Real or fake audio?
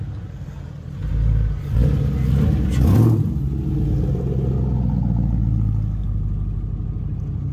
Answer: real